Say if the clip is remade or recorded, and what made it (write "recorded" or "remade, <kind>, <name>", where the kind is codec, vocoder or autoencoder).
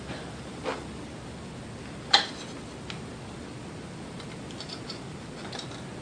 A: recorded